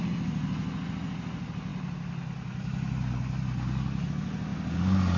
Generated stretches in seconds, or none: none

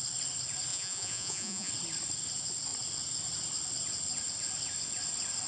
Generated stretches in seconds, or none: 0.7-1.7 (vocoder, Vocos)